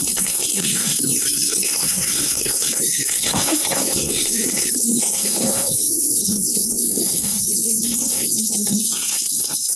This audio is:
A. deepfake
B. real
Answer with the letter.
A